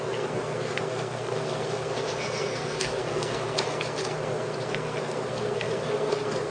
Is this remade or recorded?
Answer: remade